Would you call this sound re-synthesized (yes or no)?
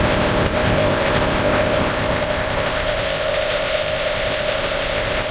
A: yes